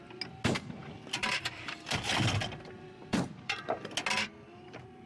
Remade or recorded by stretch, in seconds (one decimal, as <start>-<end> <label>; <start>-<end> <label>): 0.0-0.8 recorded; 0.8-3.9 remade; 3.9-5.1 recorded